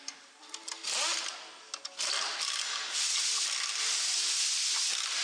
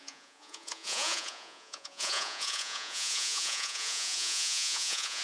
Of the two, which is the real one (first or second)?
first